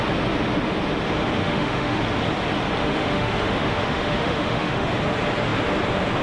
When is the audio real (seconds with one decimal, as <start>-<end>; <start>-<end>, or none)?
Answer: 0.0-1.4; 2.0-2.8; 4.9-6.2